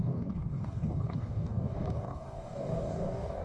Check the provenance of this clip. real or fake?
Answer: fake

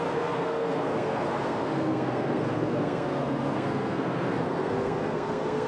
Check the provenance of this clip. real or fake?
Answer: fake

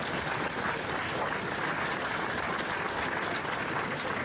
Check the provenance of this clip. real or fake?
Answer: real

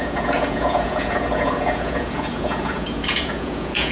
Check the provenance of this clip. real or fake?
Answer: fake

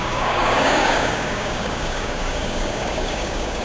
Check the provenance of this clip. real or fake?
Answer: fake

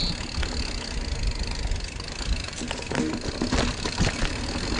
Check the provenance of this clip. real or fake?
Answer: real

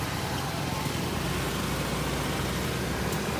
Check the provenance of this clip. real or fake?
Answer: real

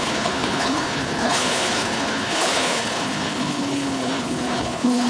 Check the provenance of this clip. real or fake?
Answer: fake